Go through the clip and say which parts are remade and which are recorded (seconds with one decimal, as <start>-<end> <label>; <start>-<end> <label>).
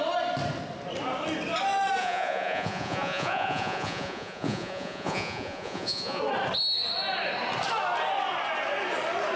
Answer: 0.0-2.0 recorded; 2.0-6.2 remade; 6.2-9.4 recorded